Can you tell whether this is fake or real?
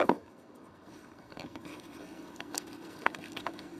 fake